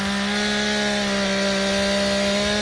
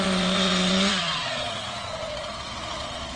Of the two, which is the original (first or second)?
first